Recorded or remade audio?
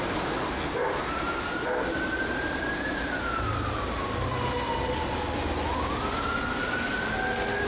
recorded